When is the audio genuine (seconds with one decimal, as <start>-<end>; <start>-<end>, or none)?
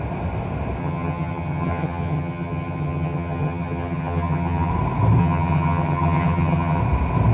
0.0-0.8; 4.7-5.2; 6.8-7.3